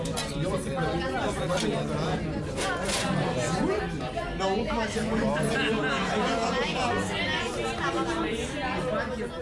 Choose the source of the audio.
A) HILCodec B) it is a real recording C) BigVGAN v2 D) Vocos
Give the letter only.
B